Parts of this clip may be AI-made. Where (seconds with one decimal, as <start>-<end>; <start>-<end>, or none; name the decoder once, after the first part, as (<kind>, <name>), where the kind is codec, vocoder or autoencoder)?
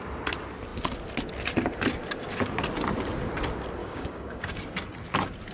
3.8-4.6 (codec, DAC)